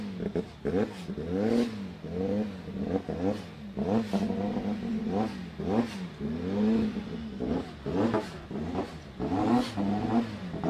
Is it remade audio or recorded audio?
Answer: recorded